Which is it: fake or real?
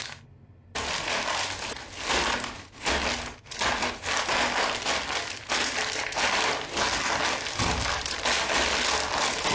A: real